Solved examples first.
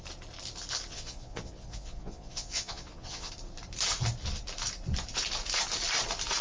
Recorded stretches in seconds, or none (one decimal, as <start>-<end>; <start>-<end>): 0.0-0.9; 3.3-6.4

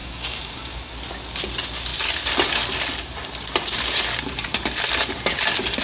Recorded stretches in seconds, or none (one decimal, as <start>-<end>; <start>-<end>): 0.9-5.8

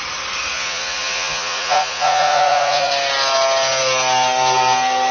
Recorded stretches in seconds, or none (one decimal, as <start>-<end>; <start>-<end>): 0.0-0.5; 2.9-5.1